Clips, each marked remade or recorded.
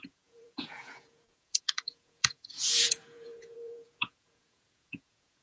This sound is remade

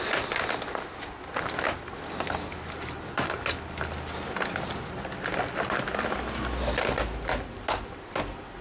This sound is recorded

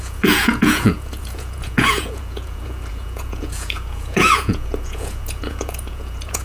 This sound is remade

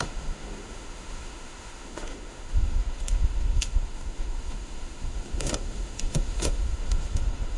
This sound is remade